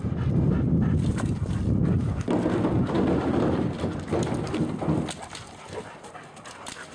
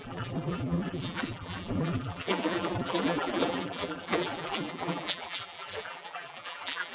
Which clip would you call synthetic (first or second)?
second